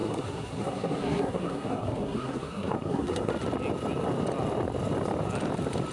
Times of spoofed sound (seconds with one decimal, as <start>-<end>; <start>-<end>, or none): 0.0-3.3